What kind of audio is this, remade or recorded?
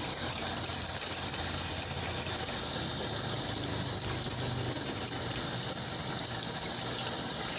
recorded